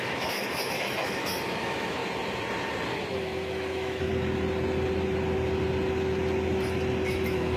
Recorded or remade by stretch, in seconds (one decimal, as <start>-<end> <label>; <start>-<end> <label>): 0.0-2.0 remade; 2.0-3.1 recorded; 3.1-4.1 remade; 4.1-7.1 recorded; 7.1-7.6 remade